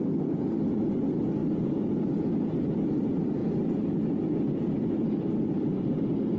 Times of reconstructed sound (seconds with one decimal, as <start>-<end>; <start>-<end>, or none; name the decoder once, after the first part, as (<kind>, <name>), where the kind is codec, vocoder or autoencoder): none